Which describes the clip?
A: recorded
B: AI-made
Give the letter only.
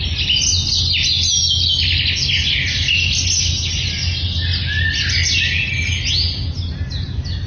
A